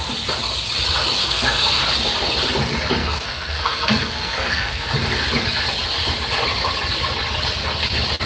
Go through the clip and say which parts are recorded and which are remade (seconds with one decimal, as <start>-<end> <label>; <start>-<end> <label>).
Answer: 0.0-1.2 recorded; 1.2-1.8 remade; 1.8-3.0 recorded; 3.0-4.9 remade; 4.9-8.3 recorded